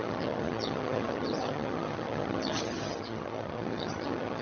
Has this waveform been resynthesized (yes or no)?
yes